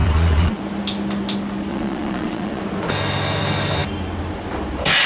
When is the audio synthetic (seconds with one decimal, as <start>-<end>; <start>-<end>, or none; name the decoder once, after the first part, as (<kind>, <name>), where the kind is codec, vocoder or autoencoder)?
0.0-0.6 (vocoder, Vocos); 1.7-2.6